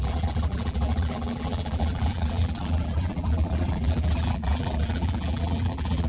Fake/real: fake